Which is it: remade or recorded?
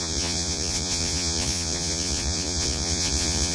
remade